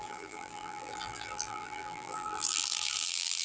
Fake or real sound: fake